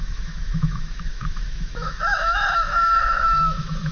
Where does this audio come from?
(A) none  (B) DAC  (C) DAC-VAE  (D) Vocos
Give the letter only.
C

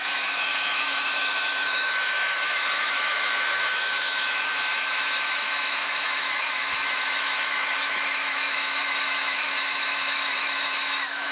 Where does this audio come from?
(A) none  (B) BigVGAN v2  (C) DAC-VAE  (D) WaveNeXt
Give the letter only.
C